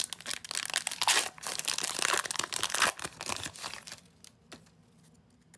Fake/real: real